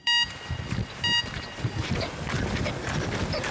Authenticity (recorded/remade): recorded